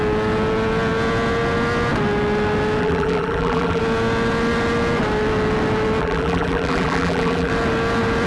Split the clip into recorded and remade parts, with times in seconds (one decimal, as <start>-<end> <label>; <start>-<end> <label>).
0.0-2.8 recorded; 2.8-3.8 remade; 3.8-6.0 recorded; 6.0-7.5 remade; 7.5-8.3 recorded